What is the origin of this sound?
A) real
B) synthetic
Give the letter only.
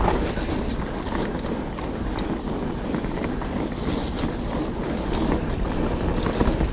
A